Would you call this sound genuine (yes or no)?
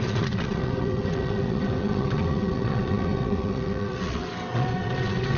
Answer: no